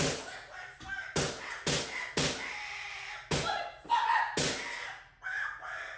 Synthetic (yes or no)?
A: no